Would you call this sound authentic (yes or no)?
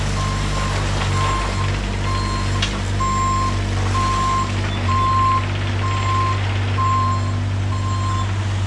yes